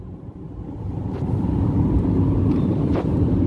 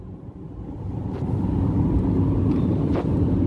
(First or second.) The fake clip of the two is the first